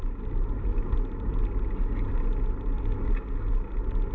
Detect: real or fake real